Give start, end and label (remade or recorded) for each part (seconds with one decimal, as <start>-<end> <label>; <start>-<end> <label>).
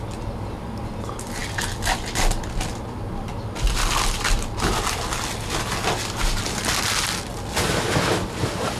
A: 0.0-8.8 recorded